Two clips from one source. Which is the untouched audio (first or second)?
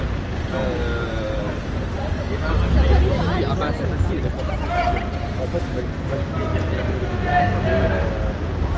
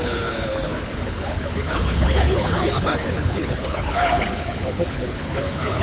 first